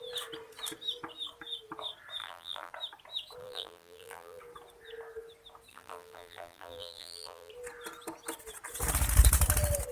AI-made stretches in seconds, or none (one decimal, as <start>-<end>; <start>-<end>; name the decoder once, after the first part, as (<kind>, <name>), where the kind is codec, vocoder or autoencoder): 2.2-2.7 (vocoder, BigVGAN v2); 3.4-4.4; 5.7-7.5